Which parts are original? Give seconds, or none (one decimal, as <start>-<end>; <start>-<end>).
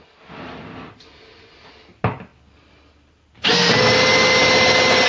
0.0-5.1